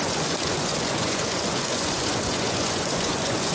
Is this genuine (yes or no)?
no